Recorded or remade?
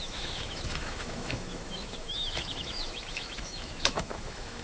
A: remade